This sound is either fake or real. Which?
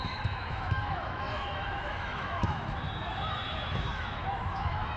fake